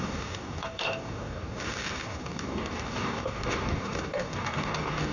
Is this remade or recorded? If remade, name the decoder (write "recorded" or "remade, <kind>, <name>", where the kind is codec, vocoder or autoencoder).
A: remade, codec, DAC